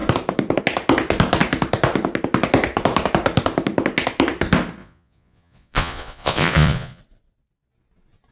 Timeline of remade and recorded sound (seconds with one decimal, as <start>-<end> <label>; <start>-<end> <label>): 0.0-4.8 recorded; 4.8-7.0 remade; 7.0-8.3 recorded